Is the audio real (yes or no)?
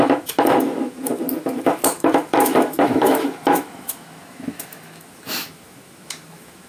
no